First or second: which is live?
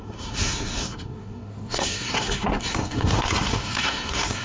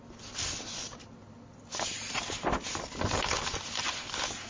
second